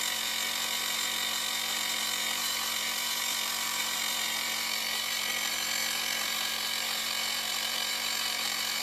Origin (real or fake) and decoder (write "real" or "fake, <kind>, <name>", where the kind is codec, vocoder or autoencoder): fake, vocoder, BigVGAN v2